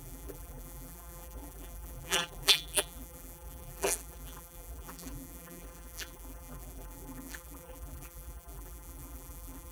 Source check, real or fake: fake